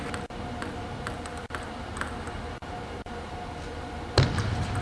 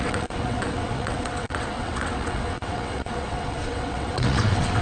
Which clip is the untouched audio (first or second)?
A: first